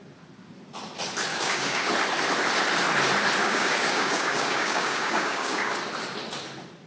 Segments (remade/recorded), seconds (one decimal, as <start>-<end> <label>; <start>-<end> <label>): 0.0-1.3 recorded; 1.3-1.9 remade; 1.9-3.4 recorded; 3.4-5.7 remade; 5.7-6.9 recorded